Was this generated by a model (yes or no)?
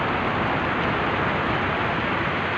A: no